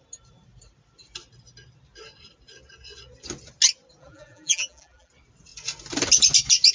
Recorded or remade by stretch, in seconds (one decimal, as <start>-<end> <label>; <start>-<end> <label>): 0.0-4.0 recorded; 4.0-5.1 remade; 5.1-6.7 recorded